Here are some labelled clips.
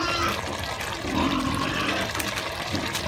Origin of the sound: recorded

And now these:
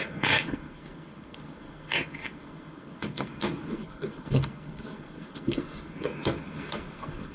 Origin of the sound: remade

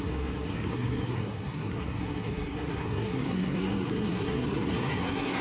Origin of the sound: remade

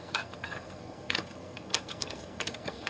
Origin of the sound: remade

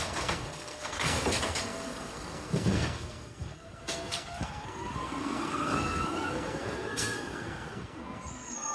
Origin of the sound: remade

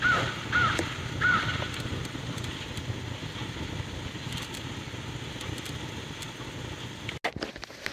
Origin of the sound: recorded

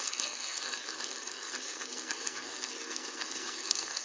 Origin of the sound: remade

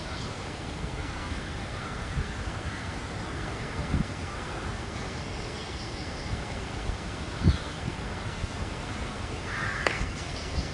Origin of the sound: remade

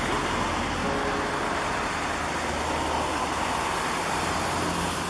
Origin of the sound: recorded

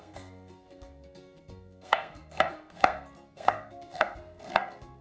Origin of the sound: remade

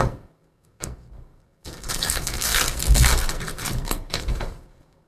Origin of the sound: remade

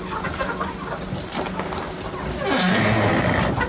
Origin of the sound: recorded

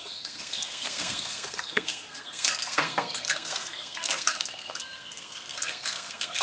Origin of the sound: remade